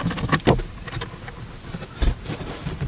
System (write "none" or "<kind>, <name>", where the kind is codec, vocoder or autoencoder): none